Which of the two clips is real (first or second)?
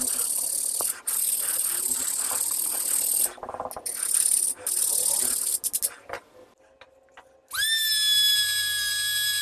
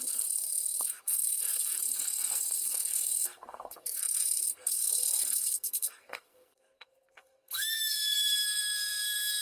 first